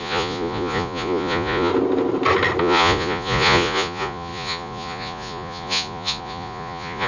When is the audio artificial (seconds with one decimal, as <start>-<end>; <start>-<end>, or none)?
0.0-1.7; 2.6-7.1